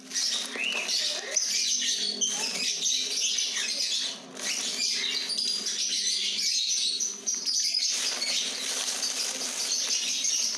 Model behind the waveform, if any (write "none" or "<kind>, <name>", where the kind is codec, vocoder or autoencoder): none